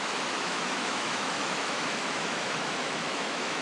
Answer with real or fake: fake